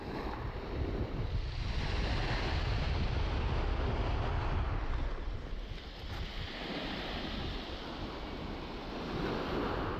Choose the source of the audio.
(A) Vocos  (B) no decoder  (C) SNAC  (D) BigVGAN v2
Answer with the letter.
B